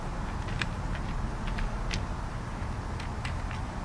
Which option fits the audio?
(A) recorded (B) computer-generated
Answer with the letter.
A